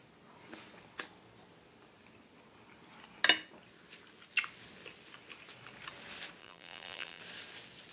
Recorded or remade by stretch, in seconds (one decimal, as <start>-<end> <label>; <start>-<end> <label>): 0.0-6.4 recorded; 6.4-7.2 remade; 7.2-7.9 recorded